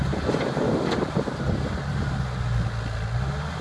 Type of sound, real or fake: real